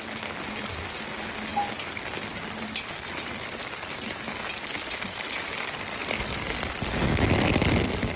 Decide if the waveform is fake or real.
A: real